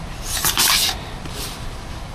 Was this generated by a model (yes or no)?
yes